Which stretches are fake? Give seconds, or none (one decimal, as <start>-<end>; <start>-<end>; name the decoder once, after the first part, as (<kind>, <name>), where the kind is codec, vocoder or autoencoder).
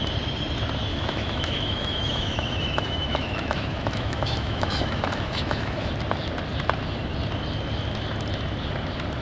0.9-5.9 (autoencoder, DAC-VAE)